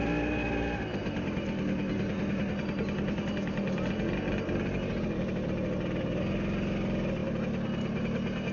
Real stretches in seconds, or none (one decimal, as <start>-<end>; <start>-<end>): 0.0-8.5